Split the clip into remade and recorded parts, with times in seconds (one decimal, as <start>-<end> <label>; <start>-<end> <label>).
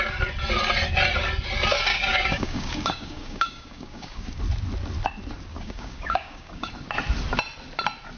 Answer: 0.0-1.9 recorded; 1.9-4.4 remade; 4.4-5.5 recorded; 5.5-6.7 remade; 6.7-8.2 recorded